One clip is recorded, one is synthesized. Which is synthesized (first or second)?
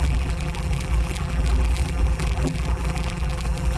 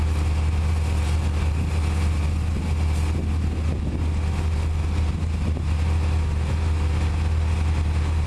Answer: first